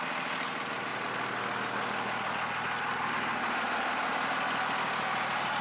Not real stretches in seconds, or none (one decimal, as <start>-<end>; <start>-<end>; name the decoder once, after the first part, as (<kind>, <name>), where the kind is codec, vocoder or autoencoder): none